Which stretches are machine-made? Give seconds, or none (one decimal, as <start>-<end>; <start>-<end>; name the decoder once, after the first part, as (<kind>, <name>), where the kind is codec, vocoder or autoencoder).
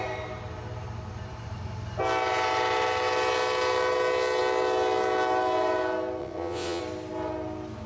6.2-6.8 (vocoder, WaveNeXt)